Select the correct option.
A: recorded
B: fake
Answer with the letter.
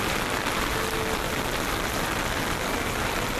A